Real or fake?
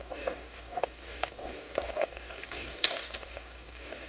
fake